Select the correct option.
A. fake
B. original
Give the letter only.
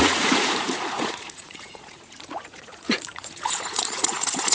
A